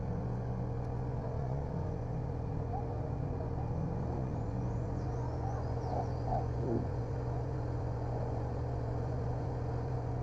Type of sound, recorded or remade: remade